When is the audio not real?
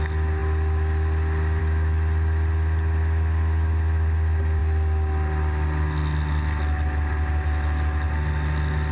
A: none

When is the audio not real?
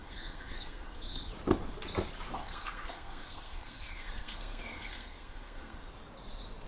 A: 0.0-1.3 (codec, SNAC); 2.4-5.9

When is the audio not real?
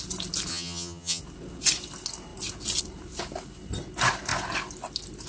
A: 0.5-1.2 (vocoder, HiFi-GAN)